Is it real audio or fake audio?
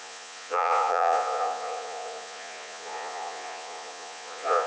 fake